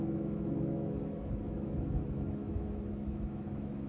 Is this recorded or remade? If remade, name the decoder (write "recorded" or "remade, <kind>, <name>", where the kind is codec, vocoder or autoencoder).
remade, autoencoder, DAC-VAE